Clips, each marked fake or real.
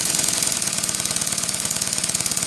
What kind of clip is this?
fake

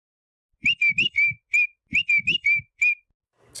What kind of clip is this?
real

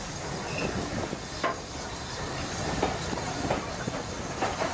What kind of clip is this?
real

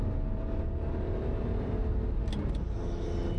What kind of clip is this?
real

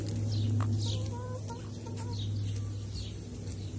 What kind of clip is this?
real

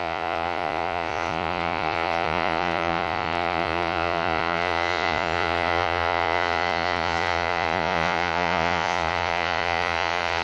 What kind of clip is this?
fake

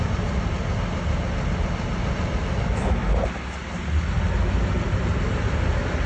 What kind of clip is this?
real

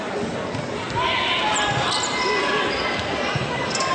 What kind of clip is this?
real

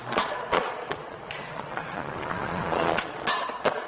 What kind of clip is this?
fake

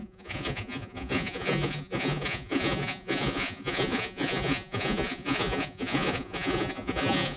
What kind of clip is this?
fake